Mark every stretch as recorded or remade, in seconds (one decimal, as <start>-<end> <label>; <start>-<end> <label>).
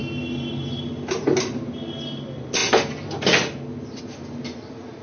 0.0-5.0 recorded